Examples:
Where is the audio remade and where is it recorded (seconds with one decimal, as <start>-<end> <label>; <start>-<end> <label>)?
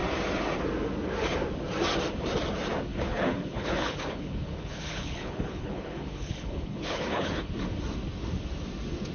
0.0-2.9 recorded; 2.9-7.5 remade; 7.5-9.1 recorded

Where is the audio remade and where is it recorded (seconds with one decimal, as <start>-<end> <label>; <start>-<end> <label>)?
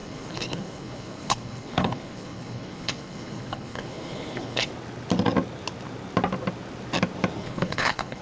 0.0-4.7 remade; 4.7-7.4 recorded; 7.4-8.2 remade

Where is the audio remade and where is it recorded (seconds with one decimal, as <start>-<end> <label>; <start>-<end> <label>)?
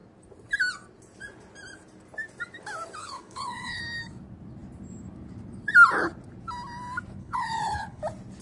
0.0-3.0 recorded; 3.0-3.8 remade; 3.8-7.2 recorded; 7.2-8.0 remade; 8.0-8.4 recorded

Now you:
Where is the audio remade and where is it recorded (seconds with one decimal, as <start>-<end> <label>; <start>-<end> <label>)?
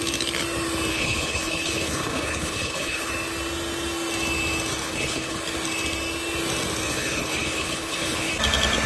0.0-0.9 recorded; 0.9-3.1 remade; 3.1-4.8 recorded; 4.8-5.4 remade; 5.4-6.9 recorded; 6.9-8.3 remade; 8.3-8.9 recorded